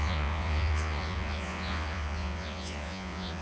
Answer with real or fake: fake